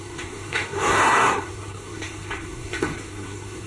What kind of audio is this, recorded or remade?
remade